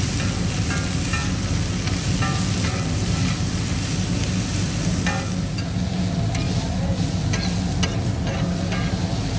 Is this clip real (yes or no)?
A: yes